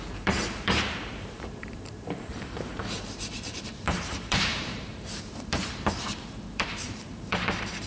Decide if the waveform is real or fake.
fake